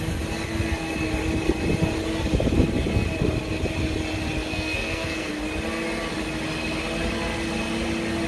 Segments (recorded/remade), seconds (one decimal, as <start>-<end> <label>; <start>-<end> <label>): 0.0-4.5 recorded; 4.5-5.3 remade; 5.3-8.3 recorded